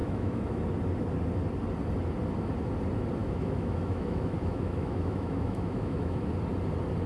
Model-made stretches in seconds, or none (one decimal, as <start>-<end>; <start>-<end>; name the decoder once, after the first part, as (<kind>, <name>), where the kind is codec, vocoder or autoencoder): 0.0-0.6 (autoencoder, DAC-VAE); 3.2-6.3